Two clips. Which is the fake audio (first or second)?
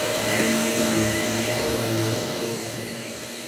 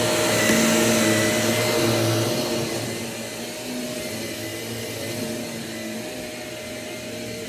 first